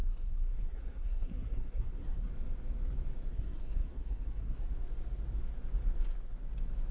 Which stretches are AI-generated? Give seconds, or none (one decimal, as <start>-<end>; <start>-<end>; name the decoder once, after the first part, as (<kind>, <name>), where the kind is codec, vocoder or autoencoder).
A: 0.0-2.3 (codec, SNAC); 3.3-4.7